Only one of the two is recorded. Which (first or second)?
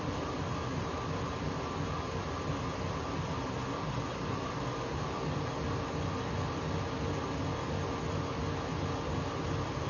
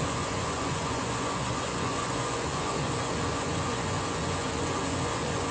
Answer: first